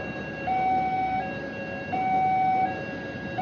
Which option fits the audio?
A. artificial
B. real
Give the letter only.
B